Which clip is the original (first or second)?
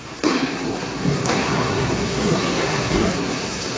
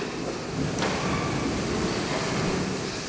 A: second